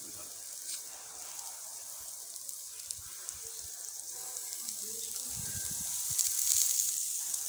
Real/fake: fake